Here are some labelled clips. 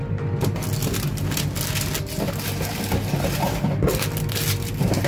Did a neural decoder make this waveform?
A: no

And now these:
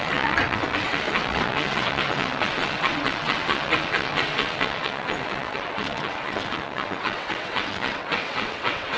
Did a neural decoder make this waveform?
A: yes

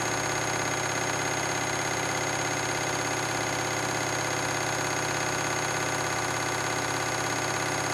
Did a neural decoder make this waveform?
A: no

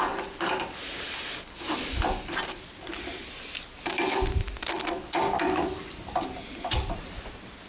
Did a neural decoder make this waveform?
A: no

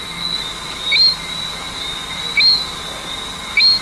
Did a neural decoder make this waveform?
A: no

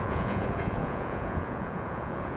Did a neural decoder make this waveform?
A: yes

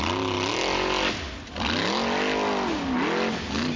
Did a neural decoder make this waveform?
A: no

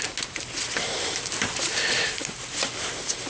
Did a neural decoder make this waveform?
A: no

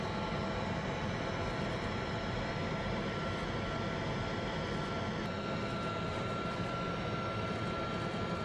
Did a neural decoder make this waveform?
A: no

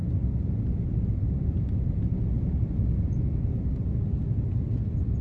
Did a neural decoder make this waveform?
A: no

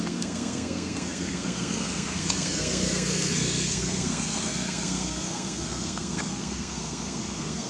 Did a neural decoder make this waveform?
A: yes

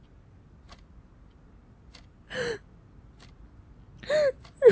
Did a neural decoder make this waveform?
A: no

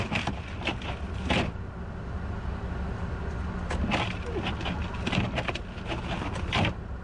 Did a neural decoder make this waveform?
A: no